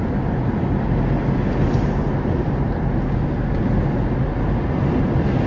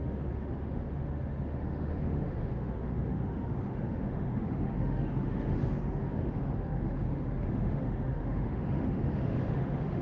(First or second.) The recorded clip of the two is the first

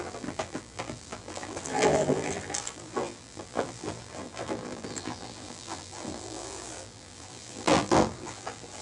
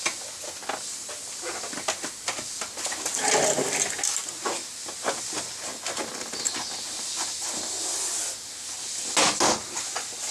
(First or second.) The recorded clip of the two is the second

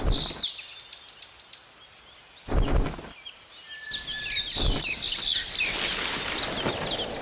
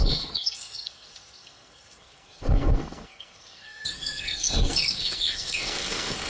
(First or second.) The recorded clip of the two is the first